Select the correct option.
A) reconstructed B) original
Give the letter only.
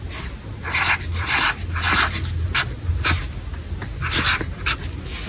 B